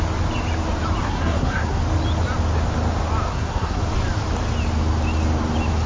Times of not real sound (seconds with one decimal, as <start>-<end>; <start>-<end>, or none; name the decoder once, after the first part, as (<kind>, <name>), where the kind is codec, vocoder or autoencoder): 1.0-1.8 (codec, SNAC); 3.3-3.8